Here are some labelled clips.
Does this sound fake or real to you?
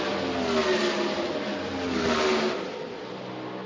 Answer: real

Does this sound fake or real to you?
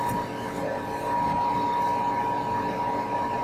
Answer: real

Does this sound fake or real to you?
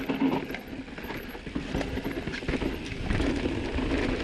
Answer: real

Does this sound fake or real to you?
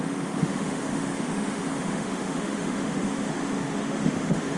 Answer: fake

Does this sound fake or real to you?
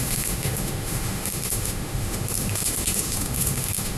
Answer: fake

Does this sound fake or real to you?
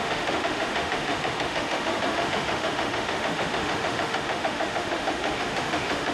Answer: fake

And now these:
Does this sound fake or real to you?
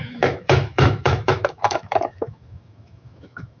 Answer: fake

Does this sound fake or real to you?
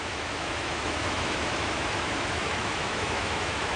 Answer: fake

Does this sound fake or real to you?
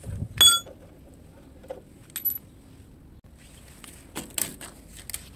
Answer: real